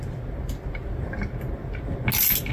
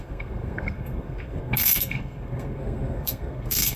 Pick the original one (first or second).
first